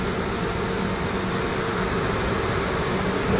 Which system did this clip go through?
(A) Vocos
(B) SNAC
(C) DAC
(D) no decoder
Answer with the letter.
D